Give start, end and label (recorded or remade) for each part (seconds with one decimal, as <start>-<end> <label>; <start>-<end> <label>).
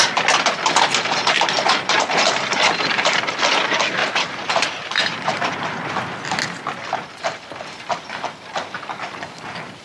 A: 0.0-4.0 recorded; 4.0-5.9 remade; 5.9-9.8 recorded